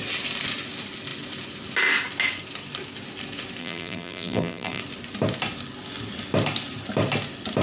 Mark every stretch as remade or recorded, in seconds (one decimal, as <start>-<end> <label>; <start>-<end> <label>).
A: 0.0-3.6 recorded; 3.6-4.8 remade; 4.8-7.6 recorded

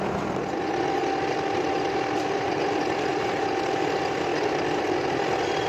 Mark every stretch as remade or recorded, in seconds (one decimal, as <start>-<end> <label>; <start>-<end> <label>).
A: 0.0-5.7 recorded